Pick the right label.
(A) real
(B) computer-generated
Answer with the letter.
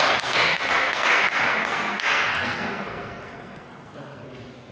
B